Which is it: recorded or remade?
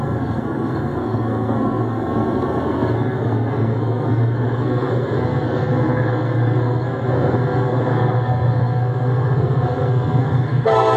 remade